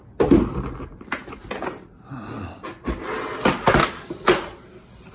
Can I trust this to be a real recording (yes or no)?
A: yes